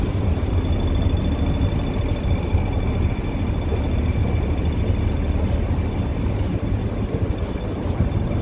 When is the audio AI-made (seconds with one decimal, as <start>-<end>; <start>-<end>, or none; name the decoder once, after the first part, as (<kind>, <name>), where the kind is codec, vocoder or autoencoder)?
none